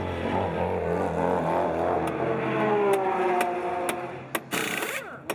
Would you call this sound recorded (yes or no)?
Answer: yes